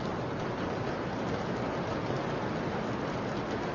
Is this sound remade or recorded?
recorded